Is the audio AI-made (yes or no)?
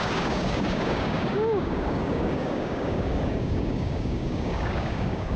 yes